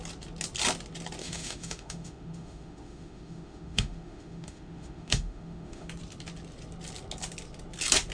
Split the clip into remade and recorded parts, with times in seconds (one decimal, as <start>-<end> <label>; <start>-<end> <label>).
0.0-1.2 recorded; 1.2-5.9 remade; 5.9-8.1 recorded